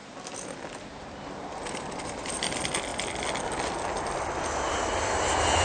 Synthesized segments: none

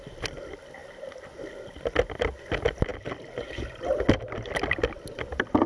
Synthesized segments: none

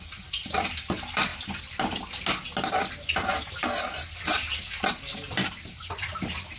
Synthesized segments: 5.4-6.1 (vocoder, BigVGAN v2)

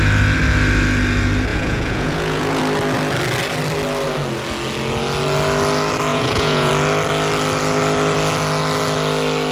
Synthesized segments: 1.5-2.6 (vocoder, Vocos); 6.1-6.7